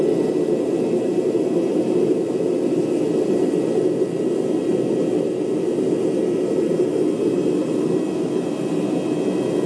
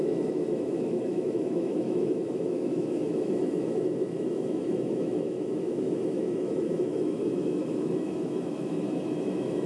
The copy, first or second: second